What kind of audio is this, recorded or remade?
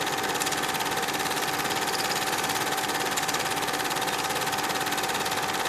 recorded